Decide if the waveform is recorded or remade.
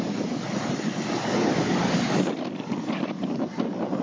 recorded